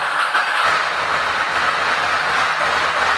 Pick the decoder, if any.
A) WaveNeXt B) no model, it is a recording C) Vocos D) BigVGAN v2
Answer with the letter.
B